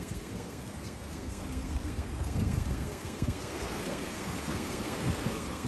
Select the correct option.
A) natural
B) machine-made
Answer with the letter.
B